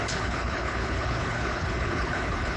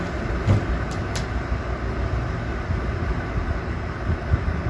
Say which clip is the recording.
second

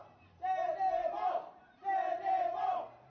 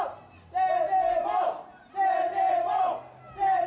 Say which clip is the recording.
second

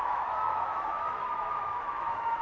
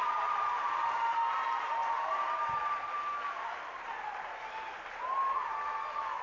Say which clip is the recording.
second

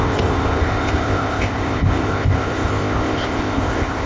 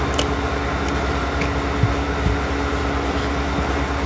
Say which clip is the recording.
second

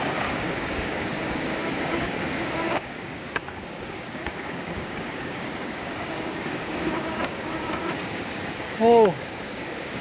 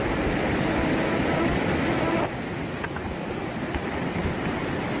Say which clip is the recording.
second